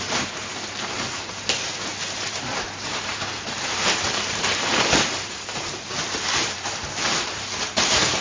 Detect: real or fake fake